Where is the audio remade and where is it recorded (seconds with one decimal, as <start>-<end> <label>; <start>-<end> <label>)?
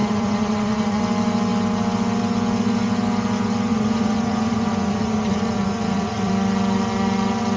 0.0-1.0 remade; 1.0-3.7 recorded; 3.7-6.3 remade; 6.3-7.6 recorded